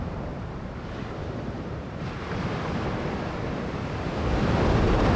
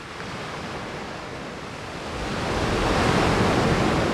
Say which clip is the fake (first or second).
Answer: first